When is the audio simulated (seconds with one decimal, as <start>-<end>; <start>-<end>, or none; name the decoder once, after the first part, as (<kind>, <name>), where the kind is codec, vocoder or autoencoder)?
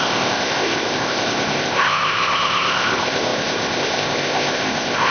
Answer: 0.0-5.1 (codec, ZipCodec)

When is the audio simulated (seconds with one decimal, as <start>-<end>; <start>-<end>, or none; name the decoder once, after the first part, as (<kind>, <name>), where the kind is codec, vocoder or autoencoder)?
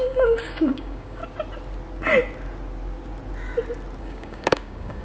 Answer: 0.0-1.2 (codec, DAC); 4.0-5.0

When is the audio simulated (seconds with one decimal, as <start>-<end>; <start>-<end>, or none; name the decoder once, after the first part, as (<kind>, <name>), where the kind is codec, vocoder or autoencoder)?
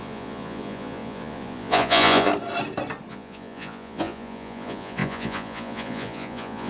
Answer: 0.0-2.3 (vocoder, Vocos); 3.1-6.7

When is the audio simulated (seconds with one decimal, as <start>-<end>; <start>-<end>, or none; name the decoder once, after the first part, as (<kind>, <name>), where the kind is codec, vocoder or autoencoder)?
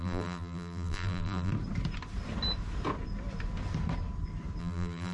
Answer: 0.0-1.5 (vocoder, BigVGAN v2); 4.6-5.1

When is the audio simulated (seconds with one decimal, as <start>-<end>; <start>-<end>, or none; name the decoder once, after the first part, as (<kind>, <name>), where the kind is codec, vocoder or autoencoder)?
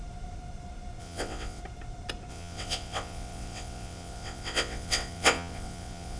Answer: 1.0-1.6 (vocoder, WaveNeXt); 2.3-6.2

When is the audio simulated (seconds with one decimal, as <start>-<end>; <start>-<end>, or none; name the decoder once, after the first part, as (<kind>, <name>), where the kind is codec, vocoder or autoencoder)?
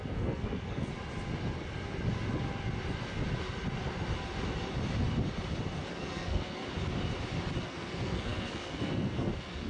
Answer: 0.0-0.9 (codec, SNAC); 5.9-6.6; 7.6-9.7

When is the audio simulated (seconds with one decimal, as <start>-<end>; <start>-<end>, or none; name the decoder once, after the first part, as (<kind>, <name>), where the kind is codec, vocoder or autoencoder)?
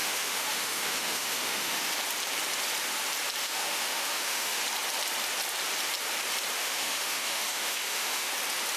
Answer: 0.0-1.9 (autoencoder, DAC-VAE); 3.4-4.6; 6.6-8.3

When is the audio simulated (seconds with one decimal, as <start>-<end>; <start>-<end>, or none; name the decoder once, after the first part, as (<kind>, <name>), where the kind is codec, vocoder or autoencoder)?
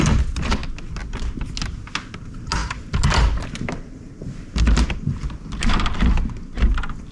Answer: none